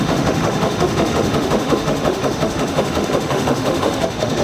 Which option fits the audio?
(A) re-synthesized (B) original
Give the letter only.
A